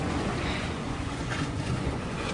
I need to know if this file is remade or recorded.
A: remade